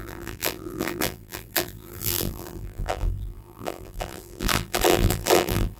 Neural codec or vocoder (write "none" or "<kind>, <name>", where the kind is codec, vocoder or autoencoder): vocoder, BigVGAN v2